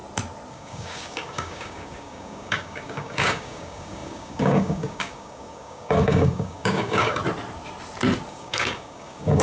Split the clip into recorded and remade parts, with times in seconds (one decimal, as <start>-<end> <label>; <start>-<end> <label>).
0.0-0.5 recorded; 0.5-7.2 remade; 7.2-8.3 recorded; 8.3-9.4 remade